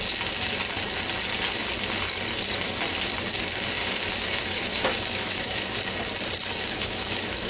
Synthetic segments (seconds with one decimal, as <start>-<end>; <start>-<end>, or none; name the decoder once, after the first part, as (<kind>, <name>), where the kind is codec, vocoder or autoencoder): 3.8-5.8 (autoencoder, DAC-VAE); 6.6-7.5